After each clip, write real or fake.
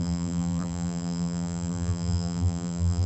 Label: fake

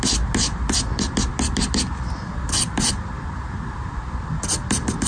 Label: real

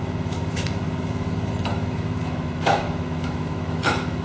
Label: fake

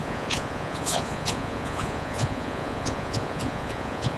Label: fake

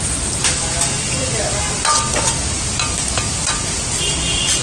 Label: real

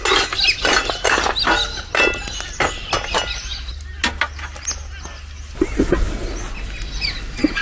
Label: real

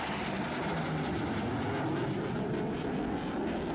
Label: real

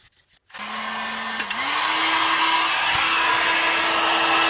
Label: real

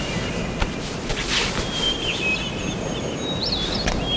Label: real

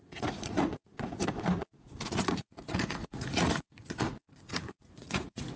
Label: fake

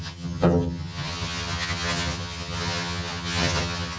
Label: fake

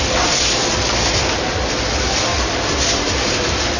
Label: real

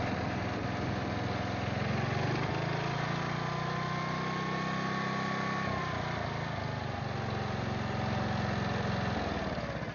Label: real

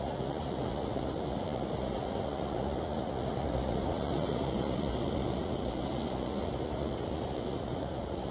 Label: fake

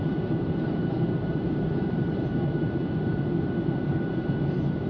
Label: fake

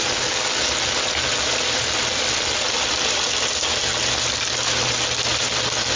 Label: real